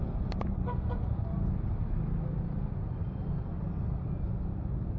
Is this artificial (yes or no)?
no